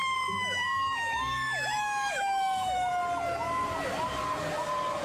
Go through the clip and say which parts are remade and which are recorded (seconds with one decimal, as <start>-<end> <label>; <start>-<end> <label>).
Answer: 0.0-2.9 remade; 2.9-5.0 recorded

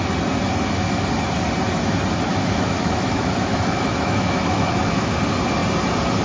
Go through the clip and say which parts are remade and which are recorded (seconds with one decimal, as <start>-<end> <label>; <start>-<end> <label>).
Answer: 0.0-2.3 recorded; 2.3-5.1 remade; 5.1-6.2 recorded